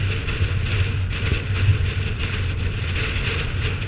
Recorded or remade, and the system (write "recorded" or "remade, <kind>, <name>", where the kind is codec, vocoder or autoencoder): recorded